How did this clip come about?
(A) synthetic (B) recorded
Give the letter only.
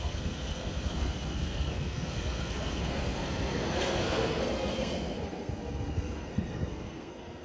A